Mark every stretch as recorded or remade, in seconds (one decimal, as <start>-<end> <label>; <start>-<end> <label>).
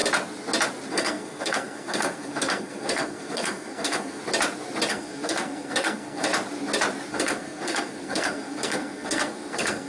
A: 0.0-0.9 recorded; 0.9-4.2 remade; 4.2-4.9 recorded; 4.9-6.3 remade; 6.3-7.1 recorded; 7.1-9.9 remade